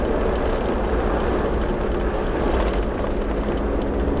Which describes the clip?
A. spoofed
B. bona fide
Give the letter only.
B